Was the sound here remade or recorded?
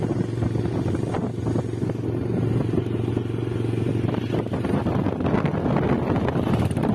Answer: recorded